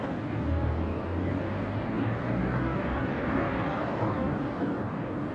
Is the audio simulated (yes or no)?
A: yes